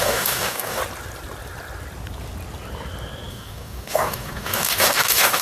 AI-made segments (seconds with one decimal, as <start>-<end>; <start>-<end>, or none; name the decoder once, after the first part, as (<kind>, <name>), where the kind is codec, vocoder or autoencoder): 0.0-0.8 (codec, DAC); 3.3-5.4